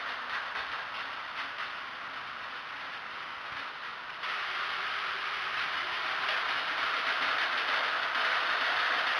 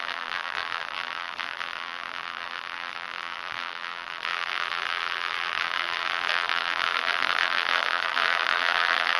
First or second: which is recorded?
first